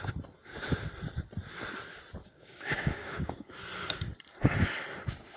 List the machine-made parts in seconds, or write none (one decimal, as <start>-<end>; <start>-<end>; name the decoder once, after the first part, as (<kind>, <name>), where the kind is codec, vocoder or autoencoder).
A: 2.3-3.5 (codec, DAC)